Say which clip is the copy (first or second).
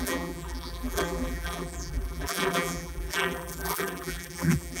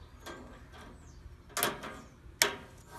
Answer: first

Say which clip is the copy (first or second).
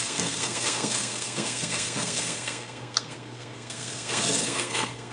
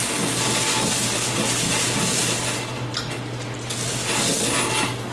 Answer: first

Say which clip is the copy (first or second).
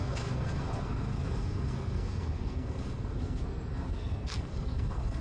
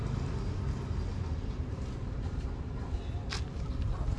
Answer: first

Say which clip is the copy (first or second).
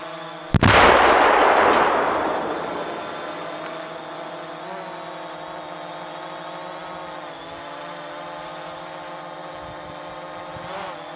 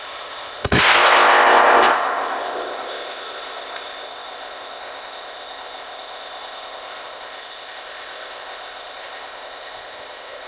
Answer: second